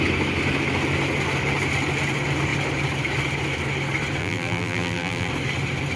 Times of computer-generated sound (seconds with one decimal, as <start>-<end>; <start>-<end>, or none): 4.2-5.3